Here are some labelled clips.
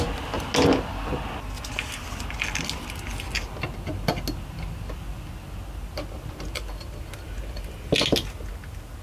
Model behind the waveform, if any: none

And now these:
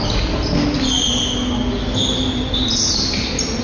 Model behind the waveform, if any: none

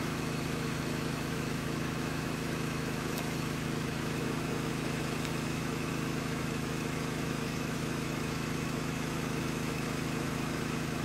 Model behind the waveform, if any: autoencoder, DAC-VAE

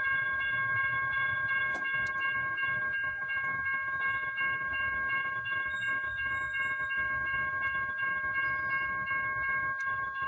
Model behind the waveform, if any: autoencoder, DAC-VAE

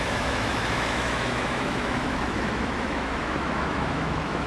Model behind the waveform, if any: autoencoder, DAC-VAE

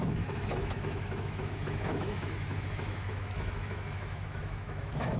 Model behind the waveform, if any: autoencoder, DAC-VAE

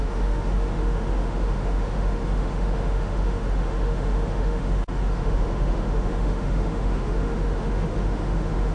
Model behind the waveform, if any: autoencoder, DAC-VAE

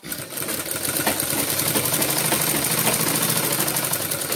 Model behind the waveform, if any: none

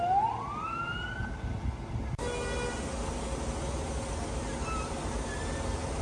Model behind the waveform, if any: none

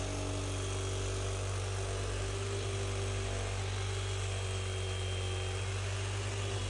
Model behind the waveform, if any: none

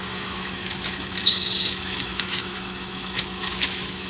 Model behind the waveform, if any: autoencoder, DAC-VAE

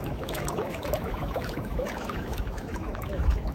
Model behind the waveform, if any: autoencoder, DAC-VAE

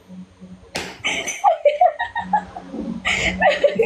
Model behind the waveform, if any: none